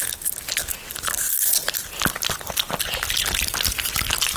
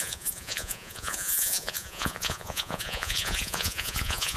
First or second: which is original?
first